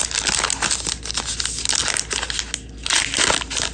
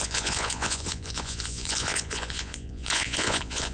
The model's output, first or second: second